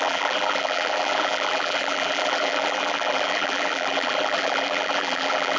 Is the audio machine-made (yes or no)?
yes